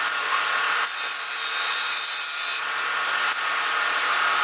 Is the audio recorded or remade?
recorded